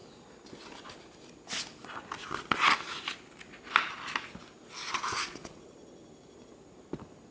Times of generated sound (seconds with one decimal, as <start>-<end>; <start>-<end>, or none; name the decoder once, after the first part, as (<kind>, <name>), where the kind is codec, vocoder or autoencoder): none